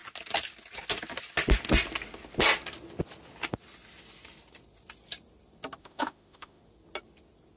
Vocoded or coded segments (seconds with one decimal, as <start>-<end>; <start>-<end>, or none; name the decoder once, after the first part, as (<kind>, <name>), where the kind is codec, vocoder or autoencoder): 5.8-6.6 (autoencoder, DAC-VAE)